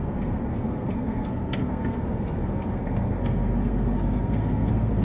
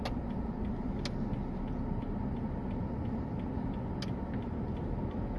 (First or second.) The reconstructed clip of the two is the first